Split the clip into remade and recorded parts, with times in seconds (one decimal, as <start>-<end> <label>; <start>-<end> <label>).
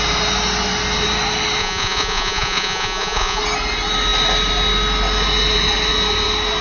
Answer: 0.0-1.6 recorded; 1.6-3.4 remade; 3.4-6.6 recorded